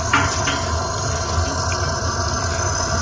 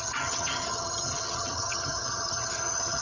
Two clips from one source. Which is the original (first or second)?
first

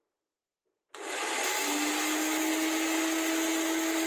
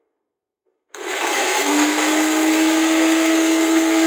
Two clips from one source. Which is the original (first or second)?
first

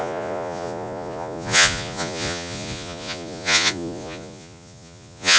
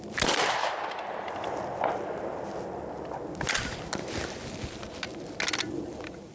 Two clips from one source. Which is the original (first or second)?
second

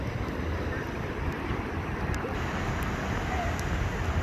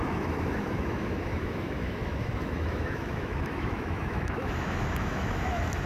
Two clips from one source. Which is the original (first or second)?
first